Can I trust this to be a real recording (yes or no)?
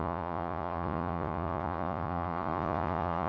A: no